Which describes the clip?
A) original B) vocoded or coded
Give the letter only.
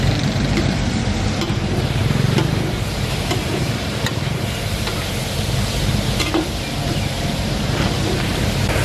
B